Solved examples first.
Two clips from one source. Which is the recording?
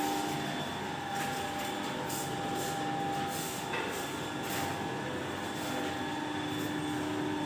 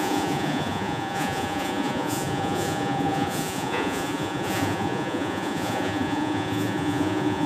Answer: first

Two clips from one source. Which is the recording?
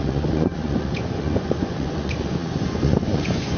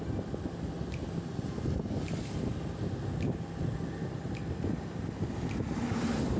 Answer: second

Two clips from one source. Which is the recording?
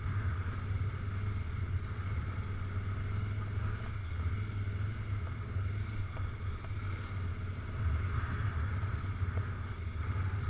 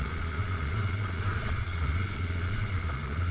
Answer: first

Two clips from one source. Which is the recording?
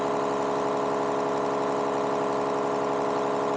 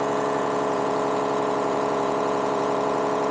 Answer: first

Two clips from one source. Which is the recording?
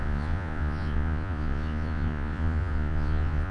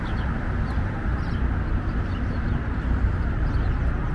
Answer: second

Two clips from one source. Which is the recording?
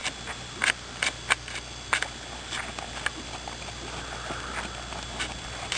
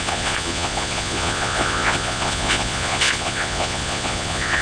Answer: first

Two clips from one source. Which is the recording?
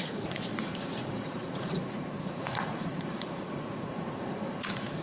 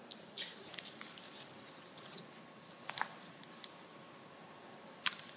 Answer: second